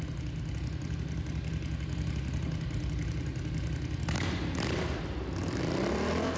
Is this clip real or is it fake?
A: real